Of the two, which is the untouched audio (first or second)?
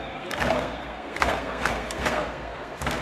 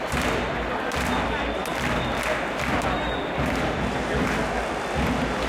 second